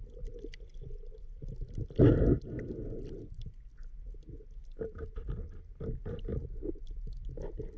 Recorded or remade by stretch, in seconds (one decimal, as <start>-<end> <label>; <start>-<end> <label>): 0.0-4.6 recorded; 4.6-5.6 remade; 5.6-6.3 recorded; 6.3-7.0 remade; 7.0-7.8 recorded

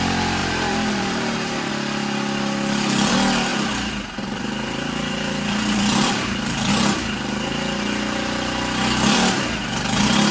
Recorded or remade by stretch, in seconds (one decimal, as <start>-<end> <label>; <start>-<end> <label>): 0.0-0.4 recorded; 0.4-1.7 remade; 1.7-3.5 recorded; 3.5-6.7 remade; 6.7-10.3 recorded

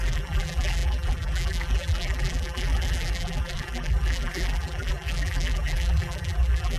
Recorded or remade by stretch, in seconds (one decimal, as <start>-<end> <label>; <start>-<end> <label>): 0.0-6.8 remade

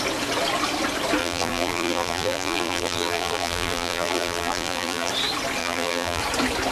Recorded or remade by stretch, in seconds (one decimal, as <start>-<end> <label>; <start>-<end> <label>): 0.0-1.2 recorded; 1.2-5.1 remade; 5.1-5.6 recorded; 5.6-6.2 remade; 6.2-6.7 recorded

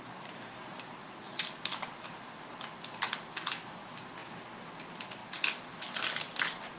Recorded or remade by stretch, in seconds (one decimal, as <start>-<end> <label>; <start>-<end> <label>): 0.0-4.2 remade; 4.2-4.8 recorded; 4.8-5.2 remade; 5.2-6.8 recorded

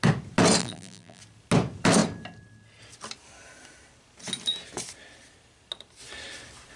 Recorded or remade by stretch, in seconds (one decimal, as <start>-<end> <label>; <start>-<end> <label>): 0.0-0.6 recorded; 0.6-1.2 remade; 1.2-6.8 recorded